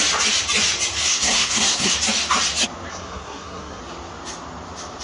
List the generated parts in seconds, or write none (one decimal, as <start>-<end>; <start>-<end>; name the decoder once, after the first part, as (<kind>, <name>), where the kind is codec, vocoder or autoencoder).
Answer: 1.0-1.9 (codec, SNAC); 2.9-3.8